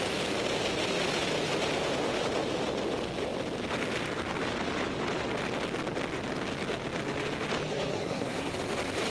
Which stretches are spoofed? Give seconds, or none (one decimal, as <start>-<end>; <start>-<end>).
7.7-8.5